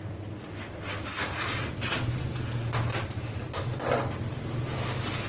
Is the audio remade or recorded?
recorded